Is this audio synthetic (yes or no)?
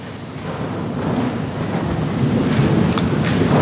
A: no